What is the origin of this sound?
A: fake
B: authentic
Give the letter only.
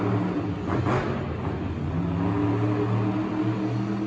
B